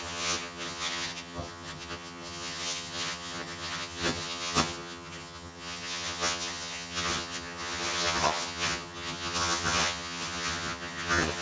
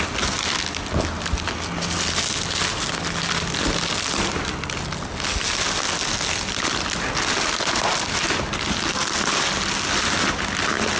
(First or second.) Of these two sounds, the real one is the second